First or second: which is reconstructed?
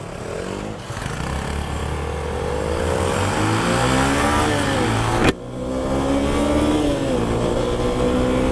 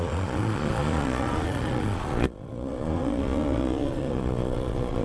second